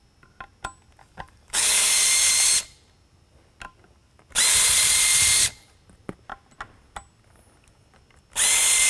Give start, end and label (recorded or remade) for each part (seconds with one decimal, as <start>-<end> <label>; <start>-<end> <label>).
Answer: 0.0-1.0 recorded; 1.0-1.9 remade; 1.9-8.9 recorded

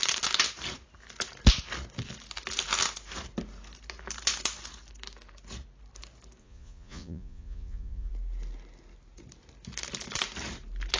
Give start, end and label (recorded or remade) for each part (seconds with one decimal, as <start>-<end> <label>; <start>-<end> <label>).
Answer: 0.0-6.4 recorded; 6.4-8.1 remade; 8.1-11.0 recorded

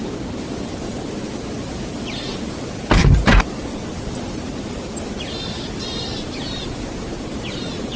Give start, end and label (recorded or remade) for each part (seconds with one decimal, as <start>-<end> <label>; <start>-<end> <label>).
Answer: 0.0-8.0 recorded

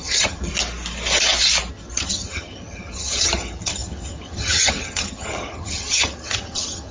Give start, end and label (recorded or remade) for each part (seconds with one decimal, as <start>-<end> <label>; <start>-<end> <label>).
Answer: 0.0-0.5 remade; 0.5-1.7 recorded; 1.7-6.9 remade

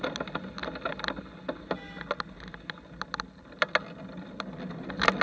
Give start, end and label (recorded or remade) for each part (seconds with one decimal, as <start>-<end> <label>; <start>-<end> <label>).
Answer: 0.0-5.2 recorded

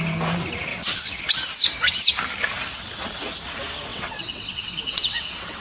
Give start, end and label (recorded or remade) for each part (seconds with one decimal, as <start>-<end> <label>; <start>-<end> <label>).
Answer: 0.0-0.7 recorded; 0.7-1.2 remade; 1.2-3.9 recorded; 3.9-5.6 remade

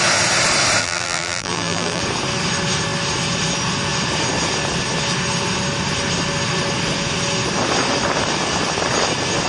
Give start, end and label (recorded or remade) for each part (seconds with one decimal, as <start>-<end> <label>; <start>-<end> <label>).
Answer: 0.0-0.8 recorded; 0.8-2.0 remade; 2.0-9.5 recorded

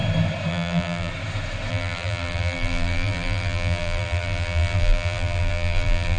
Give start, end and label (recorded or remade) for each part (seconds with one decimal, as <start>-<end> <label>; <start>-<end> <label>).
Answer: 0.0-0.5 recorded; 0.5-1.1 remade; 1.1-1.7 recorded; 1.7-6.2 remade